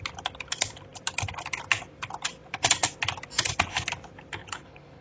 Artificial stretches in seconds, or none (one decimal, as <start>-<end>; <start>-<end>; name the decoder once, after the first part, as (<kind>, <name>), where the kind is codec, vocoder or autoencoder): 4.4-5.0 (codec, HILCodec)